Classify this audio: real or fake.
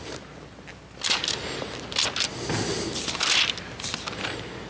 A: real